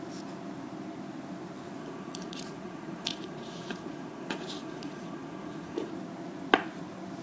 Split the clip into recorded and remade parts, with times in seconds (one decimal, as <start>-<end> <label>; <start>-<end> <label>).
0.0-1.8 recorded; 1.8-5.9 remade; 5.9-7.2 recorded

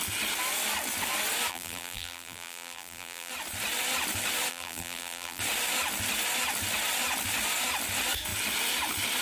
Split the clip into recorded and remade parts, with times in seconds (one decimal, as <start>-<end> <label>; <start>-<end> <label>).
0.0-1.5 recorded; 1.5-3.3 remade; 3.3-4.5 recorded; 4.5-5.4 remade; 5.4-9.2 recorded

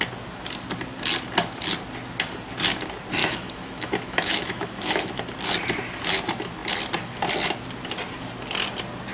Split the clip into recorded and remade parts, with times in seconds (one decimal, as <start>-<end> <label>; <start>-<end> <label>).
0.0-3.2 recorded; 3.2-5.2 remade; 5.2-9.1 recorded